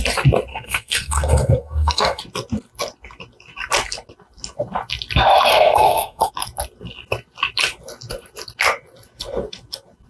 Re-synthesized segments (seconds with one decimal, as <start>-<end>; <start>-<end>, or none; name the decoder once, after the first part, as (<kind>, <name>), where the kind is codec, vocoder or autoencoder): 0.5-2.2 (codec, SNAC); 5.5-6.3